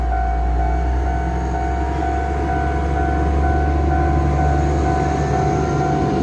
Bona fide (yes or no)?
yes